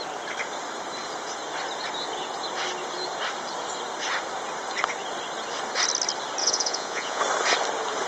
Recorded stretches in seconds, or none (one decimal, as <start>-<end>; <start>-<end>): 0.0-6.4; 7.2-8.1